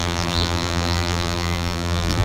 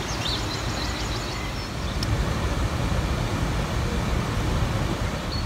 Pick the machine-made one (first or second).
first